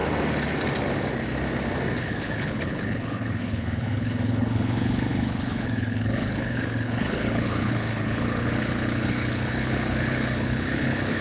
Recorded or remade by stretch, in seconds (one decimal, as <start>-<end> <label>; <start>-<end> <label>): 0.0-2.0 recorded; 2.0-11.2 remade